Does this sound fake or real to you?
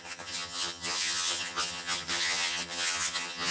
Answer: fake